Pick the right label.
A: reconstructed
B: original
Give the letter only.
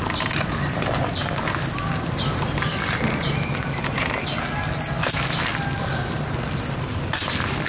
B